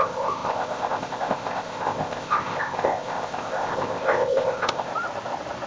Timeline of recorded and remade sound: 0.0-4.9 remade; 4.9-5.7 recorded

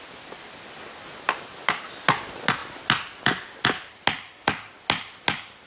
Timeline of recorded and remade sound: 0.0-5.7 recorded

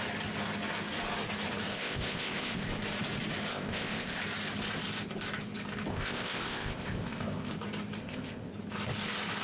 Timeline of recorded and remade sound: 0.0-1.7 recorded; 1.7-2.7 remade; 2.7-3.5 recorded; 3.5-4.2 remade; 4.2-5.9 recorded; 5.9-7.5 remade; 7.5-8.0 recorded; 8.0-8.5 remade; 8.5-9.4 recorded

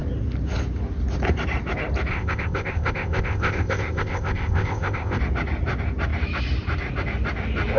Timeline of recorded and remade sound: 0.0-2.1 recorded; 2.1-5.2 remade; 5.2-7.8 recorded

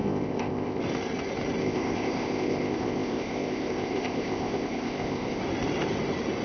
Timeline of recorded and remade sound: 0.0-0.8 remade; 0.8-1.6 recorded; 1.6-5.4 remade; 5.4-6.4 recorded

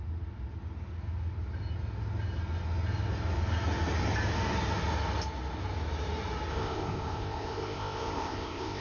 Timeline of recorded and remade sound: 0.0-6.5 recorded; 6.5-8.8 remade

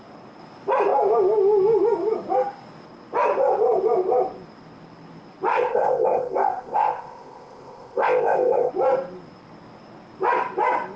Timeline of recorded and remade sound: 0.0-5.5 recorded; 5.5-8.7 remade; 8.7-11.0 recorded

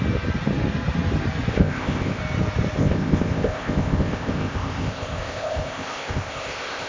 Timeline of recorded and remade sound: 0.0-1.5 recorded; 1.5-2.2 remade; 2.2-2.8 recorded; 2.8-6.9 remade